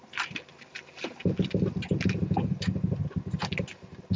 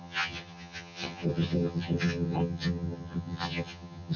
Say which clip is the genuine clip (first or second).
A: first